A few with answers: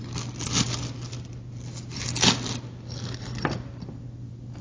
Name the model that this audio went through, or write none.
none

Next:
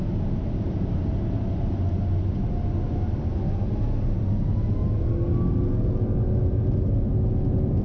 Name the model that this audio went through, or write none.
none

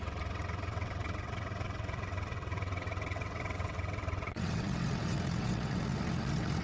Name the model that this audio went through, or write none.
vocoder, WaveNeXt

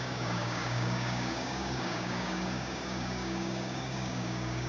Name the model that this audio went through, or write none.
codec, DAC